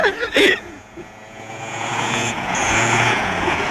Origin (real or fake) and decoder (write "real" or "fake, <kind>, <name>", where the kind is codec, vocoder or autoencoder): fake, vocoder, Vocos